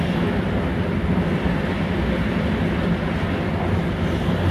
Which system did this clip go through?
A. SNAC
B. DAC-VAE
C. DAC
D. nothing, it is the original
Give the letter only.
D